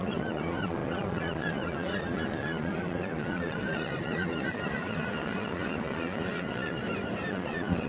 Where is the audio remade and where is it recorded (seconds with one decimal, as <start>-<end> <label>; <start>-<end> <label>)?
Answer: 0.0-6.8 remade; 6.8-7.3 recorded; 7.3-7.9 remade